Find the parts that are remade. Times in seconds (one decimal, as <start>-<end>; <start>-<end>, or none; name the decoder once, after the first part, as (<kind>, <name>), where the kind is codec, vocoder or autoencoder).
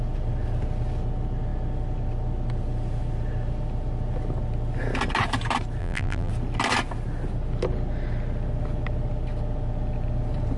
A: 5.8-6.3 (vocoder, BigVGAN v2)